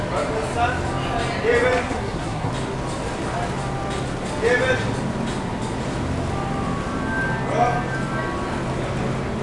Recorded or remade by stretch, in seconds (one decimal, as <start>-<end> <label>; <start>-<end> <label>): 0.0-1.8 recorded; 1.8-2.5 remade; 2.5-9.4 recorded